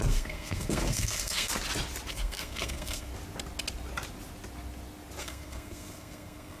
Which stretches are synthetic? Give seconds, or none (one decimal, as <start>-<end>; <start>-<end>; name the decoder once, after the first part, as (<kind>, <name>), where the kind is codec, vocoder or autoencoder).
0.0-1.5 (codec, SNAC); 2.1-3.1; 5.2-6.6